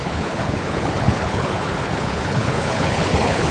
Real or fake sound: fake